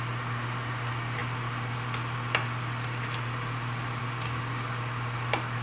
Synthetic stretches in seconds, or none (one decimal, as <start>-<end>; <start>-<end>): none